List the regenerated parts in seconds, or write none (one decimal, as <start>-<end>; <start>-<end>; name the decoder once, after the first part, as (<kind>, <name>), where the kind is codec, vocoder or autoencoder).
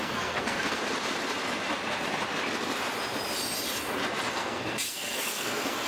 0.0-0.8 (codec, SNAC); 4.3-5.9